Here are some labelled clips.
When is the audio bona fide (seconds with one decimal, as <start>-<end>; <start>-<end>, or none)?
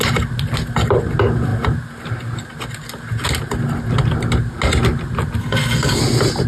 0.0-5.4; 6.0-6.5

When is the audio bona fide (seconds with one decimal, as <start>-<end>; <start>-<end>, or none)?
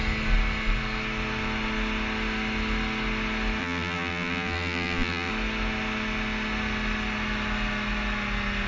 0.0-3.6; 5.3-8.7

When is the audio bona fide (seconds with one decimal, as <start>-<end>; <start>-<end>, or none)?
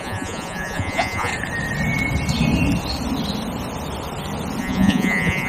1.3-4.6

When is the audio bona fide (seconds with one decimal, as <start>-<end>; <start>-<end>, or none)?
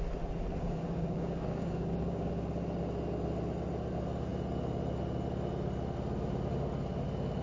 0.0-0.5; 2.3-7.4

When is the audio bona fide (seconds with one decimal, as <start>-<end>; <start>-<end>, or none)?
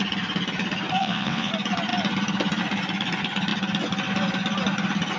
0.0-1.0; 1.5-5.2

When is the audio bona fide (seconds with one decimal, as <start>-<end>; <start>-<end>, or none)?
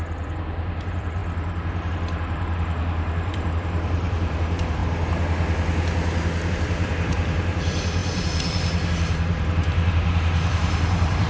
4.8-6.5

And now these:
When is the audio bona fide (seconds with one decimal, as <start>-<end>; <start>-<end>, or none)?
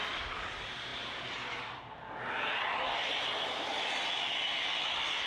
0.0-5.3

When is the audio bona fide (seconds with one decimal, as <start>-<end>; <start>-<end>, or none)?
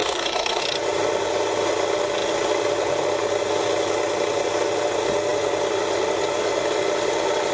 0.6-7.5